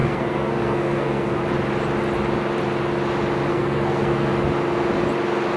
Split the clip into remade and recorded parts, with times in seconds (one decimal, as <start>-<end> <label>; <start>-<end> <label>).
0.0-1.4 remade; 1.4-3.5 recorded; 3.5-4.3 remade; 4.3-5.6 recorded